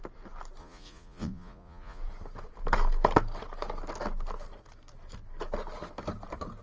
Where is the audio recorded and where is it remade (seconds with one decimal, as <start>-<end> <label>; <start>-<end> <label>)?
0.0-0.6 recorded; 0.6-2.0 remade; 2.0-6.6 recorded